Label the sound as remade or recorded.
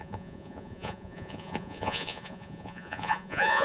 remade